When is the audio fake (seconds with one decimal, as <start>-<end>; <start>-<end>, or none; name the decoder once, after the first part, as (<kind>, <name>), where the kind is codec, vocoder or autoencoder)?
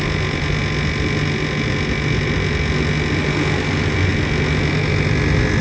none